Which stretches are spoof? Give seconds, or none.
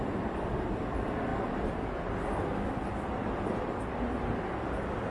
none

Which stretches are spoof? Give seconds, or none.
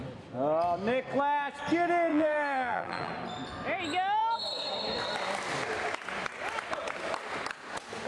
2.1-3.1 (vocoder, BigVGAN v2)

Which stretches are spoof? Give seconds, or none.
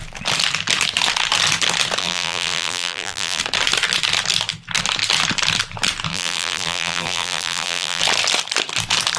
2.0-3.4 (vocoder, BigVGAN v2); 6.1-8.0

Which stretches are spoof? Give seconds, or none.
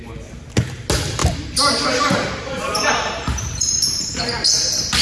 1.2-4.2 (vocoder, BigVGAN v2)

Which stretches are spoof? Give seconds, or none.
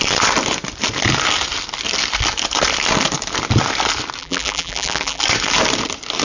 4.2-5.2 (vocoder, BigVGAN v2)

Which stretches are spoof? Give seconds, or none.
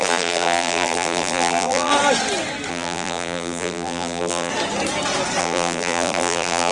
0.0-1.9 (vocoder, BigVGAN v2); 2.7-4.5; 5.4-6.7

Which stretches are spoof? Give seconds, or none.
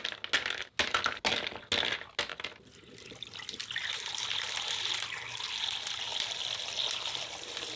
2.3-4.6 (vocoder, BigVGAN v2)